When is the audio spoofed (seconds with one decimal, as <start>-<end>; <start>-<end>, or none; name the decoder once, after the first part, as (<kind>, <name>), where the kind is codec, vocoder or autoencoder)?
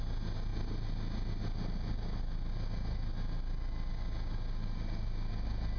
none